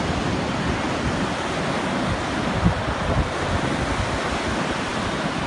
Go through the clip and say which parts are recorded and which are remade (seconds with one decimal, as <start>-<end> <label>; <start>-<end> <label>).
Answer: 0.0-4.9 recorded; 4.9-5.5 remade